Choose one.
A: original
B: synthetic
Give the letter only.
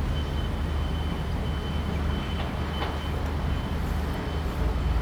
A